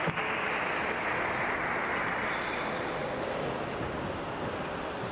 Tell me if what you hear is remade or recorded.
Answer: recorded